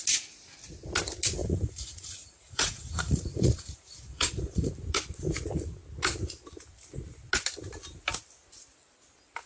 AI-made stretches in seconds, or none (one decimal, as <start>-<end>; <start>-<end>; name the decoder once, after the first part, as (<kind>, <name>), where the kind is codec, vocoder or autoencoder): 1.4-4.7 (vocoder, Vocos)